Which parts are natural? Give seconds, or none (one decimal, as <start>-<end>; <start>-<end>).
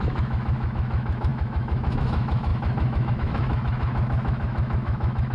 none